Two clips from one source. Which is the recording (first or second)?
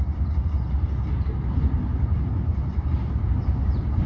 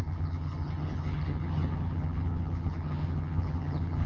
first